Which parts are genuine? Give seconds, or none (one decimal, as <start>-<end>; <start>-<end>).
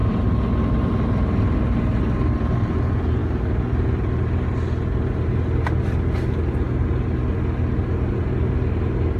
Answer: 0.6-9.2